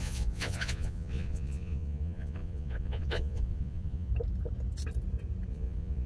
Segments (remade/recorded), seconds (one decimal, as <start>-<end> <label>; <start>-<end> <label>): 0.0-4.1 remade; 4.1-5.5 recorded; 5.5-6.1 remade